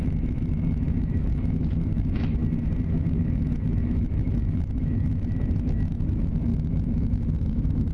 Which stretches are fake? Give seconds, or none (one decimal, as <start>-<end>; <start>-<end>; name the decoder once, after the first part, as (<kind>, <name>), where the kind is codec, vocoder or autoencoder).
0.0-2.4 (autoencoder, DAC-VAE); 2.9-7.9

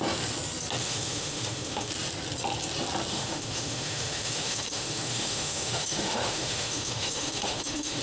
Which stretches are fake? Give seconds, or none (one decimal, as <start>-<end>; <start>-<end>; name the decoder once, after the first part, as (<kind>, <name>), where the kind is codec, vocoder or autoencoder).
0.8-1.9 (autoencoder, DAC-VAE); 3.1-8.0

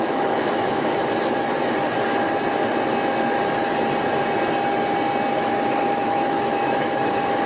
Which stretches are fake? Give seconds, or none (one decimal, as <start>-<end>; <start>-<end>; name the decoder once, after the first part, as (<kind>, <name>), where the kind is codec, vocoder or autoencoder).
0.0-1.0 (autoencoder, DAC-VAE); 5.4-7.5

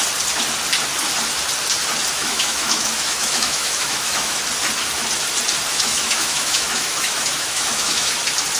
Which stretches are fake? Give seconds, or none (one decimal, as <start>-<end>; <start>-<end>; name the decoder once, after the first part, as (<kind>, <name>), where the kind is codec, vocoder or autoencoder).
2.2-4.4 (autoencoder, DAC-VAE); 5.7-8.1

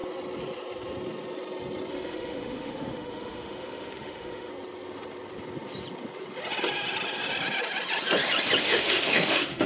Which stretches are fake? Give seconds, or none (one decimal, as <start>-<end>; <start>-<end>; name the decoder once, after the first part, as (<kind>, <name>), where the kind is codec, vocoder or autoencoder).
1.9-4.5 (autoencoder, DAC-VAE); 8.6-9.7

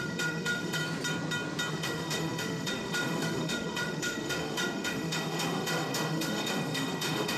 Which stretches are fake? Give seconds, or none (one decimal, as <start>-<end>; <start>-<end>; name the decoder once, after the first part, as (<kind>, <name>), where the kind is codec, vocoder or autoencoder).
0.0-0.8 (autoencoder, DAC-VAE); 1.7-7.4

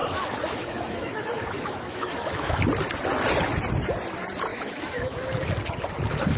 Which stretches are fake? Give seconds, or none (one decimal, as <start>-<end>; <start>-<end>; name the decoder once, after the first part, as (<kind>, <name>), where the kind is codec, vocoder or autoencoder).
0.0-2.6 (autoencoder, DAC-VAE); 4.5-5.3